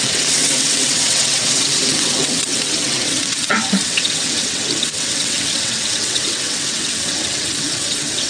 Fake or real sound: fake